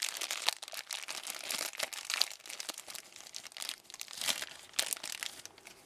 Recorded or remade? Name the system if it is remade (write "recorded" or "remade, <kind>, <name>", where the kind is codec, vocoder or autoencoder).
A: recorded